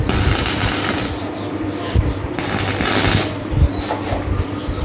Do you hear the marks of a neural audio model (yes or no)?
no